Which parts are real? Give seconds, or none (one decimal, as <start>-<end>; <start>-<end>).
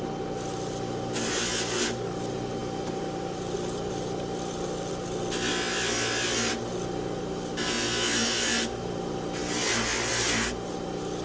0.0-2.6; 3.9-11.2